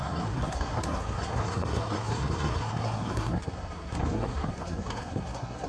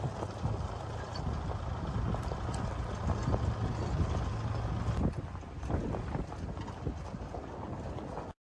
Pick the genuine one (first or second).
second